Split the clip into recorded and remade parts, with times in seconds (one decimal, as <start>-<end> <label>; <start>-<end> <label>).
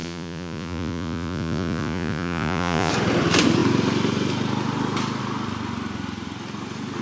0.0-2.9 remade; 2.9-7.0 recorded